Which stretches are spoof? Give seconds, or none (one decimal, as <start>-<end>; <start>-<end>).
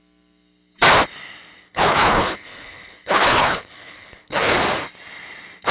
1.6-4.6